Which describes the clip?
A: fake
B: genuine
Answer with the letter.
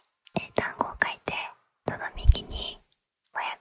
B